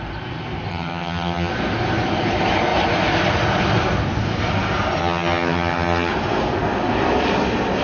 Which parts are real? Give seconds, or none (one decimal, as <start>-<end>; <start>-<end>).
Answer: 0.0-0.7; 1.5-5.0; 6.1-7.8